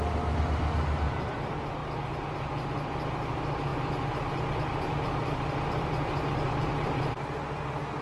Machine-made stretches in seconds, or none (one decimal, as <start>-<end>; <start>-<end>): 3.7-7.0